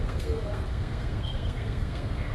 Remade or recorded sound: remade